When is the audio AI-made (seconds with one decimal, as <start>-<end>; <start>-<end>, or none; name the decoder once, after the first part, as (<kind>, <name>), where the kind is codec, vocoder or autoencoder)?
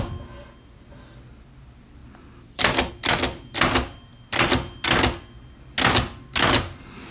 none